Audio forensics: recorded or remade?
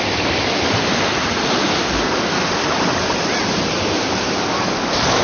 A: recorded